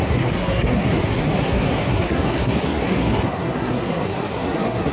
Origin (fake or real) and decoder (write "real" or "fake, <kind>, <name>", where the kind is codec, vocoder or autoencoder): fake, codec, SNAC